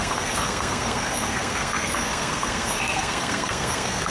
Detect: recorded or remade remade